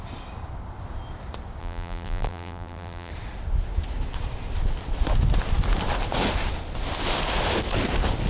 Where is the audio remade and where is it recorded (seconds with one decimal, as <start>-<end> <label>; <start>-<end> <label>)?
0.0-1.6 recorded; 1.6-3.1 remade; 3.1-8.3 recorded